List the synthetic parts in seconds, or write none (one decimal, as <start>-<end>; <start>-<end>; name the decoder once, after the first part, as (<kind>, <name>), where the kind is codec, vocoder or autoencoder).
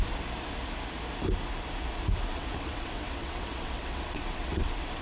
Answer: 2.3-5.0 (vocoder, WaveNeXt)